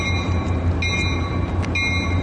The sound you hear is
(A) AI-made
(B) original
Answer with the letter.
B